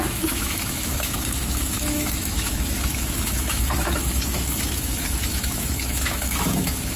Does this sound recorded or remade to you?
remade